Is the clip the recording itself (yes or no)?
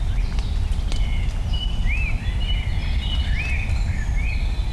yes